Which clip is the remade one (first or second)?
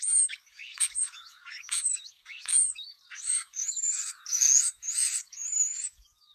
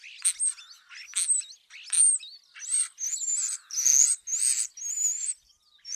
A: first